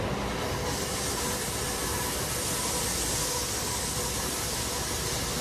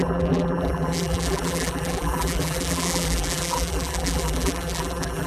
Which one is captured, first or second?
first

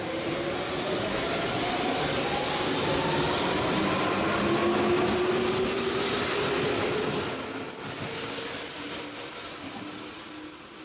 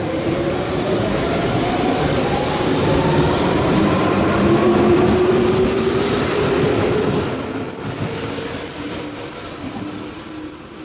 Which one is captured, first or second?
first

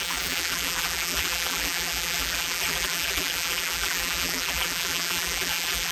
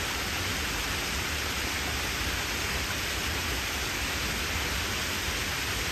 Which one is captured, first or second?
second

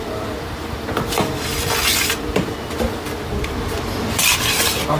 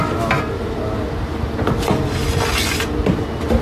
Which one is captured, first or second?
second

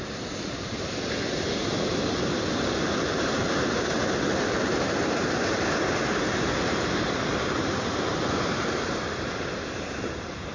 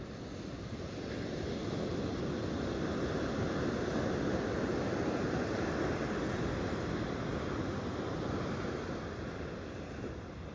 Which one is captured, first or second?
second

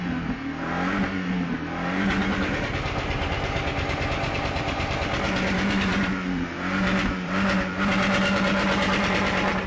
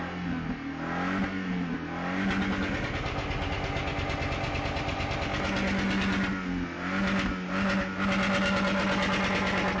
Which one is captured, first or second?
second